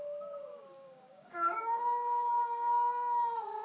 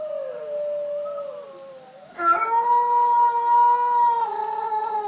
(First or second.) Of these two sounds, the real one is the second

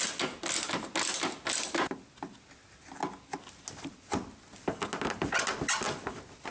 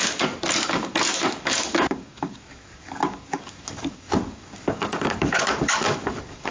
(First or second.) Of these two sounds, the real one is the first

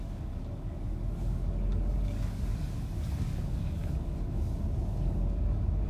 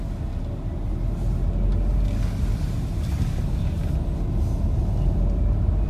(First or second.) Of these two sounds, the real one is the second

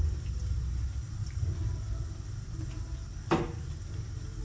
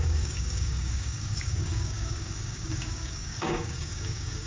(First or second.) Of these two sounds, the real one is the first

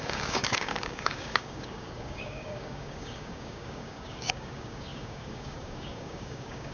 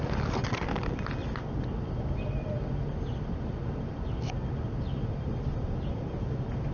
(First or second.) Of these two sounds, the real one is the second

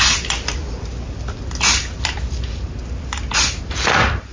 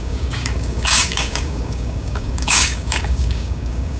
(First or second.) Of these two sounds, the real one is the first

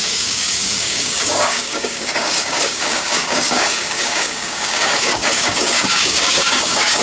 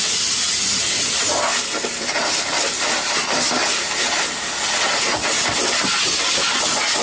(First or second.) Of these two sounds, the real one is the second